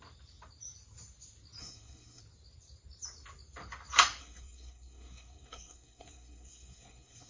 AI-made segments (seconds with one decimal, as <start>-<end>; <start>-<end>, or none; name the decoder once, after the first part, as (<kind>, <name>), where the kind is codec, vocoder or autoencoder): 1.6-2.2 (codec, SNAC); 4.2-7.3